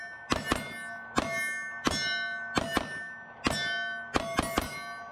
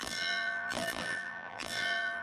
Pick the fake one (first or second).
second